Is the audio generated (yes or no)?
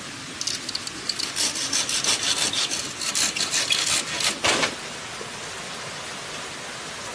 no